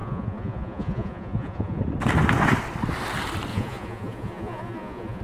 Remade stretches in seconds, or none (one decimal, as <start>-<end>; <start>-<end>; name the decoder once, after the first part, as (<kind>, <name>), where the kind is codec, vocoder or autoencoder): 0.0-1.8 (vocoder, Vocos); 3.5-5.2